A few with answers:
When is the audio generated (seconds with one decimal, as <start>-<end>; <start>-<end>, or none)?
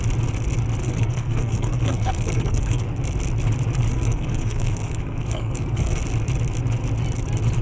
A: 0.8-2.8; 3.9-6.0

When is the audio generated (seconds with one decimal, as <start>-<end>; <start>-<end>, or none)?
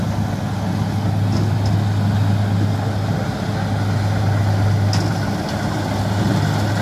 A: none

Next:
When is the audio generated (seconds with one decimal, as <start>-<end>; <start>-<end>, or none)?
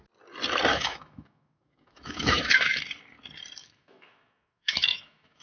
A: 0.7-2.8; 3.6-5.4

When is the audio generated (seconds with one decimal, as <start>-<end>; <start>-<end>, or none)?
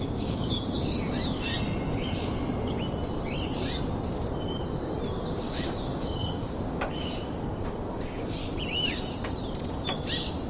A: 0.0-1.5; 5.4-8.4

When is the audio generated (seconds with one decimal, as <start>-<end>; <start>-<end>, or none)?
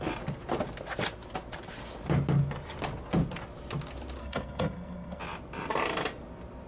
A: 4.2-5.2